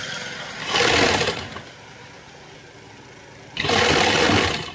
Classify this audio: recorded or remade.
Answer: recorded